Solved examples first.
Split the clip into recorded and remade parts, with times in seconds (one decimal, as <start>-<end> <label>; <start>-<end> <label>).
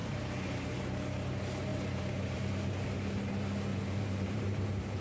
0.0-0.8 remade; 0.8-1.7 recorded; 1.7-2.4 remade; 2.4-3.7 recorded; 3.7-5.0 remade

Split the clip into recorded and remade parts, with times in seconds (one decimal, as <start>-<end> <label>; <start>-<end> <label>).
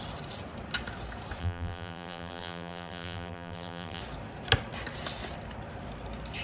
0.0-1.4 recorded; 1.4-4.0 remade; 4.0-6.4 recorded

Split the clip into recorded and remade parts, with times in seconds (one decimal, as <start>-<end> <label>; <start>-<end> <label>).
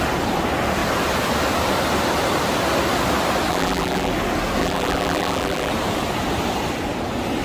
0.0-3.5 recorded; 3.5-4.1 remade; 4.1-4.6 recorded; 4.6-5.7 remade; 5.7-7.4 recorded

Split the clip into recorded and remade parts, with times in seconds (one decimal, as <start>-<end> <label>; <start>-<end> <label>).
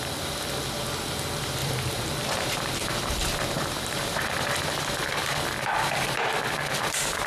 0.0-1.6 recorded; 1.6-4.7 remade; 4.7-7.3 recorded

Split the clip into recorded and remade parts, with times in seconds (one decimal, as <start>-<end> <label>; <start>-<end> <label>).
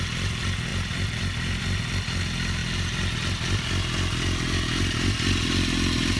0.0-2.6 recorded; 2.6-3.7 remade; 3.7-6.2 recorded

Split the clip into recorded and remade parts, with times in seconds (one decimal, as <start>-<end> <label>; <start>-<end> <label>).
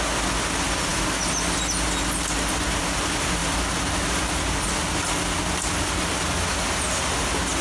0.0-7.6 recorded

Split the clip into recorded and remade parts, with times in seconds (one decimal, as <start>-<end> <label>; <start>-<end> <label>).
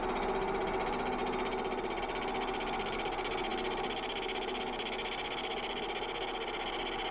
0.0-7.1 recorded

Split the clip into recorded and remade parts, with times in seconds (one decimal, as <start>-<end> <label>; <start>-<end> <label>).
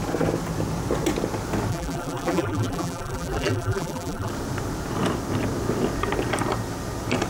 0.0-1.7 recorded; 1.7-4.3 remade; 4.3-7.3 recorded